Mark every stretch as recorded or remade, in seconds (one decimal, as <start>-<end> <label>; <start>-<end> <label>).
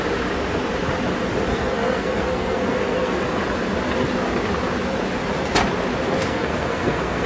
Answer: 0.0-1.5 recorded; 1.5-3.2 remade; 3.2-6.2 recorded; 6.2-7.3 remade